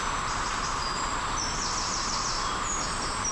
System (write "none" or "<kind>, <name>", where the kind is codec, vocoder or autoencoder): none